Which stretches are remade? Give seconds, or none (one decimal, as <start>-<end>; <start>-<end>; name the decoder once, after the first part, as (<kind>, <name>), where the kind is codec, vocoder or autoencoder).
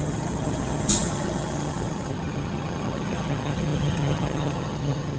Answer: 0.0-5.2 (vocoder, HiFi-GAN)